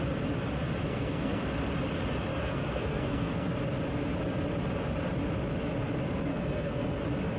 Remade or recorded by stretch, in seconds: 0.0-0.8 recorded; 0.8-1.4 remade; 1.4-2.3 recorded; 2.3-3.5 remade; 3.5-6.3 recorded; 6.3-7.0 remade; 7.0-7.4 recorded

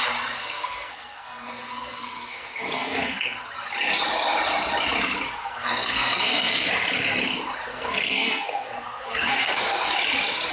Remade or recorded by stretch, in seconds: 0.0-0.4 recorded; 0.4-3.4 remade; 3.4-5.4 recorded; 5.4-6.7 remade; 6.7-7.7 recorded; 7.7-9.9 remade; 9.9-10.5 recorded

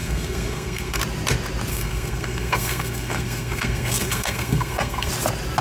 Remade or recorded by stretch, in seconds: 0.0-1.0 remade; 1.0-1.7 recorded; 1.7-5.1 remade; 5.1-5.6 recorded